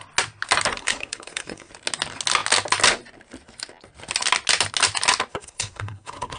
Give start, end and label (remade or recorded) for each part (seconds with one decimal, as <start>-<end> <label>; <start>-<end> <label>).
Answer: 0.0-0.8 recorded; 0.8-1.7 remade; 1.7-5.3 recorded; 5.3-6.4 remade